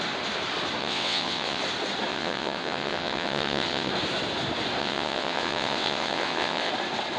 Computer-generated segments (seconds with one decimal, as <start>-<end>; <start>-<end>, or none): 0.8-1.6; 2.1-3.9; 4.8-6.7